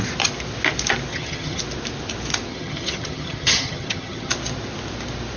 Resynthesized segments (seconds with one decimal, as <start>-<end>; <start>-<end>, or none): 1.1-1.6; 2.5-4.3